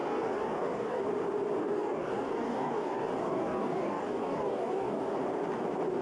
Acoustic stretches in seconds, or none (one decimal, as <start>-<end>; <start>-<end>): 1.0-1.6; 5.2-6.0